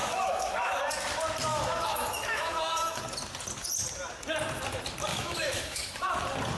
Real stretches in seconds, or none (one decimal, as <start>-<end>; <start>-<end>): 0.8-1.5; 3.0-5.1; 6.1-6.6